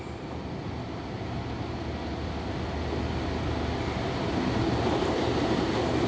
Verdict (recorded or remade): recorded